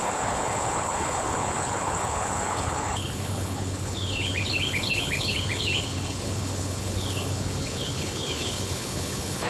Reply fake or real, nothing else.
fake